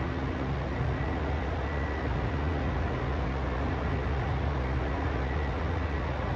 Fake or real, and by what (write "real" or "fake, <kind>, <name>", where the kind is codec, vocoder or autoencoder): fake, vocoder, Vocos